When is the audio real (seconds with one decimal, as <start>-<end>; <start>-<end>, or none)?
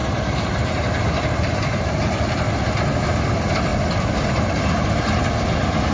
2.2-5.9